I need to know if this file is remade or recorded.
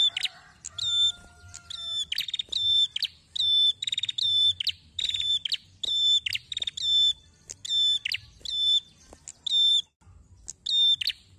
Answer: recorded